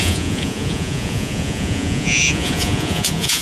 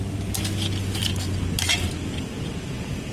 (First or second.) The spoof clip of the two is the first